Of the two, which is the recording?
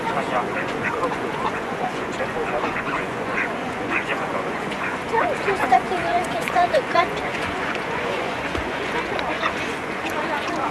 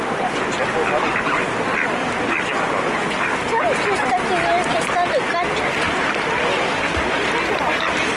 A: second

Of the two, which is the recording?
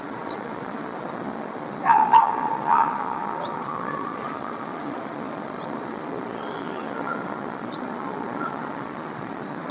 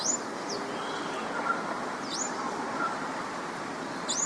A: second